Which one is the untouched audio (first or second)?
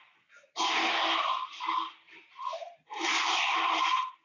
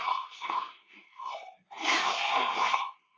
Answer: first